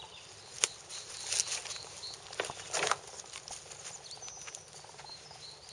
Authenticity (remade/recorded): recorded